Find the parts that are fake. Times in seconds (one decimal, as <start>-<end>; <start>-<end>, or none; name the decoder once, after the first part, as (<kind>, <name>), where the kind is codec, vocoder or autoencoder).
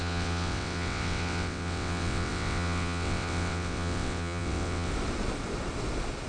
0.0-4.9 (vocoder, WaveNeXt)